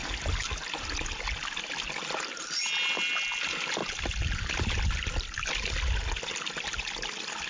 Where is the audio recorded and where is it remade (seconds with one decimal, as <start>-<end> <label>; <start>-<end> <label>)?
0.0-7.5 recorded